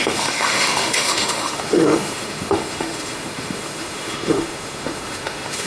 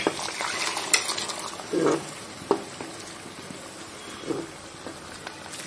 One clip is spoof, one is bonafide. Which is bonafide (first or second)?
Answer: second